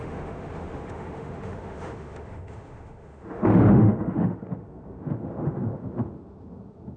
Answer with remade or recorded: remade